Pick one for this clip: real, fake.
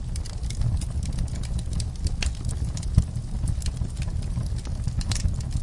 real